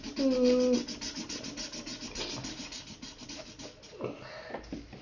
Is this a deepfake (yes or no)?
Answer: no